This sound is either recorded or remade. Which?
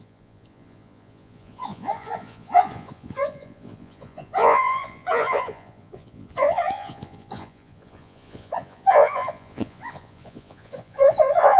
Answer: remade